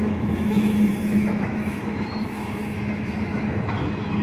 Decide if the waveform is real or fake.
fake